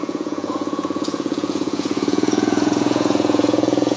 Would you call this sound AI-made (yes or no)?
yes